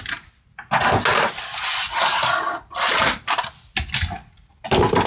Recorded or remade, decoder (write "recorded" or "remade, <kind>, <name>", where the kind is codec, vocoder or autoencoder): recorded